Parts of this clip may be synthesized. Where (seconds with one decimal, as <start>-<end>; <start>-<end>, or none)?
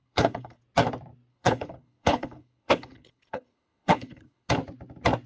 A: 0.0-0.6; 1.3-4.5